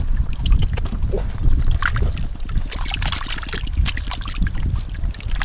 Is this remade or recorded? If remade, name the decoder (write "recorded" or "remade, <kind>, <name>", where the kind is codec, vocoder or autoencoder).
recorded